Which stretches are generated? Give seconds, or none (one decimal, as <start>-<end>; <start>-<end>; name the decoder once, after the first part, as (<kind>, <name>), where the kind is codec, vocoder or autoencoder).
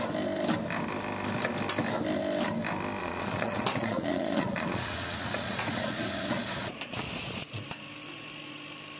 3.0-7.6 (vocoder, Vocos)